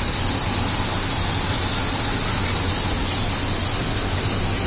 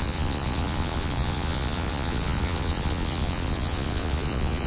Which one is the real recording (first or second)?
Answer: first